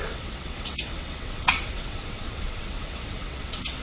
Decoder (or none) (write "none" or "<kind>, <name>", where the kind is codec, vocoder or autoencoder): vocoder, WaveNeXt